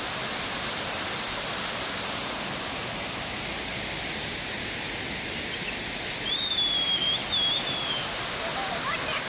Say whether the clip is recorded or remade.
recorded